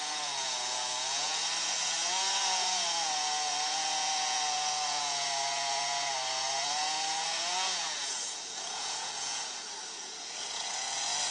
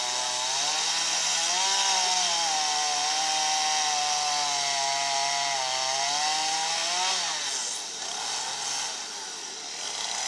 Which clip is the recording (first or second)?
second